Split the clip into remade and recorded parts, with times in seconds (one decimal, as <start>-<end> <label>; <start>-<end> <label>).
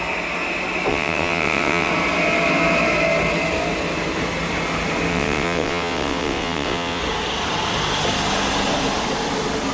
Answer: 0.0-0.9 recorded; 0.9-1.9 remade; 1.9-5.1 recorded; 5.1-7.0 remade; 7.0-9.7 recorded